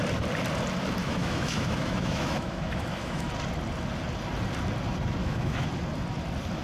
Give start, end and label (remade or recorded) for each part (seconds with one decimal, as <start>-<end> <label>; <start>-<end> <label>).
0.0-1.0 recorded; 1.0-3.3 remade; 3.3-5.2 recorded; 5.2-5.7 remade; 5.7-6.6 recorded